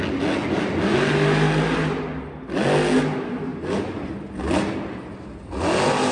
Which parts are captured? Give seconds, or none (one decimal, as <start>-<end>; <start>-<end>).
0.0-6.1